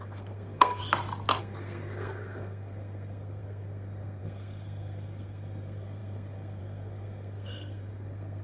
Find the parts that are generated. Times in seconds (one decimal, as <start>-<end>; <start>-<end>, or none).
0.0-0.8; 1.4-8.4